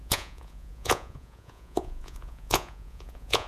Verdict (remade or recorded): remade